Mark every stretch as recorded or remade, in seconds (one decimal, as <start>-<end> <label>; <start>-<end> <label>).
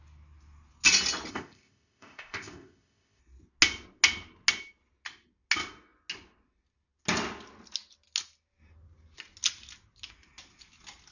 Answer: 0.0-1.3 recorded; 1.3-3.2 remade; 3.2-11.1 recorded